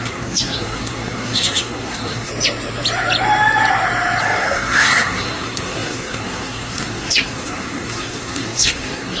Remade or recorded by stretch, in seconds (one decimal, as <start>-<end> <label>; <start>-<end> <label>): 0.0-2.3 remade; 2.3-4.2 recorded; 4.2-9.2 remade